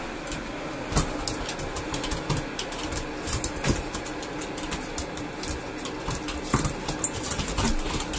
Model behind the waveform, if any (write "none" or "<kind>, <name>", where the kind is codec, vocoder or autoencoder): none